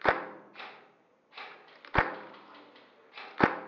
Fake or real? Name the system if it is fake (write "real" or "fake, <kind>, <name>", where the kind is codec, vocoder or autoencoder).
real